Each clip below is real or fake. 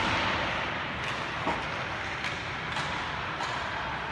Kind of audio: real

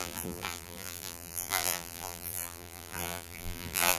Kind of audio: fake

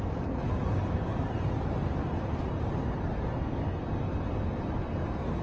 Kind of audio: real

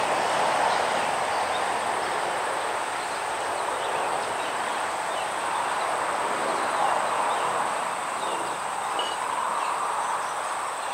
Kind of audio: fake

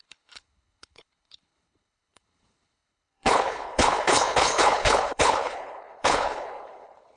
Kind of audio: fake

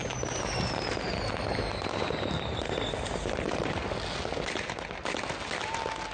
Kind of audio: real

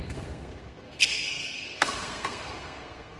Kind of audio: fake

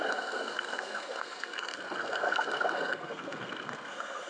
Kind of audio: fake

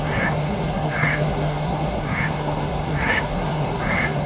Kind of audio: fake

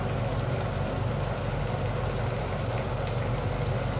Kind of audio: real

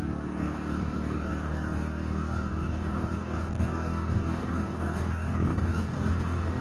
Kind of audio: fake